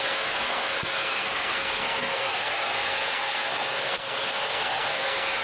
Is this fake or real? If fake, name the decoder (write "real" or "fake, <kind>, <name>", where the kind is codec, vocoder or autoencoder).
fake, codec, SNAC